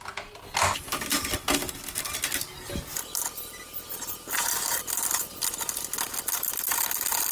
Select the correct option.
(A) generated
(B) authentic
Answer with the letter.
B